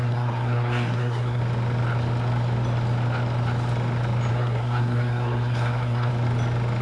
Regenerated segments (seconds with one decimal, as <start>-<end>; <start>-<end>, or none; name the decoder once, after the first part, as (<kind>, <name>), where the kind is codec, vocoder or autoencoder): 0.0-1.4 (codec, SNAC); 4.3-6.1

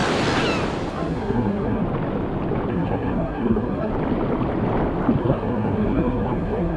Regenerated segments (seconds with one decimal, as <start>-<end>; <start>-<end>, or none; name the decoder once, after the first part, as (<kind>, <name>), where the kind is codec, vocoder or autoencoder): 0.9-1.8 (codec, SNAC); 2.7-3.9; 5.2-6.8